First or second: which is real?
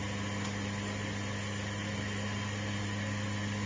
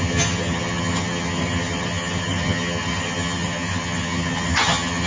first